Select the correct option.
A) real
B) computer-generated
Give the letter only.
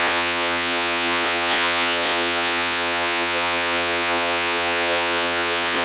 B